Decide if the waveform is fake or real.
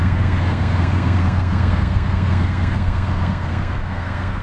fake